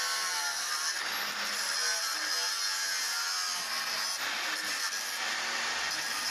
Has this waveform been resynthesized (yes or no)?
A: no